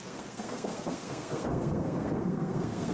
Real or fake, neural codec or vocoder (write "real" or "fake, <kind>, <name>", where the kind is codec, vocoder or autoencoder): fake, codec, SNAC